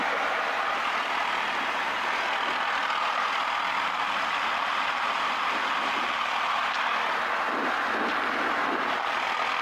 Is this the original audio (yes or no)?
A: no